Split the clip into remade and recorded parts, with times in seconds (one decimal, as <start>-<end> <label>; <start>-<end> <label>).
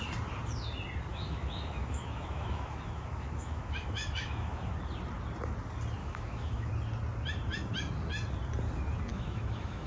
0.0-1.1 recorded; 1.1-4.7 remade; 4.7-6.0 recorded; 6.0-6.7 remade; 6.7-9.1 recorded; 9.1-9.9 remade